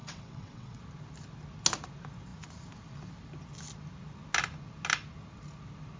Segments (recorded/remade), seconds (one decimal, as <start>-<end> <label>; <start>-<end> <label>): 0.0-0.8 remade; 0.8-6.0 recorded